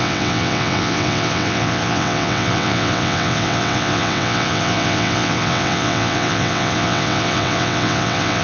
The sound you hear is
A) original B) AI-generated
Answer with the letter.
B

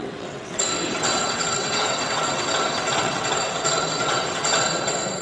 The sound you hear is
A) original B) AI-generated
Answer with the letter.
B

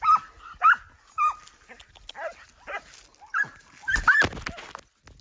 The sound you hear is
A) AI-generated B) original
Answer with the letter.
B